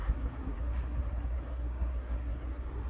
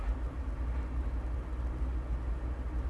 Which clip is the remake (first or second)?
first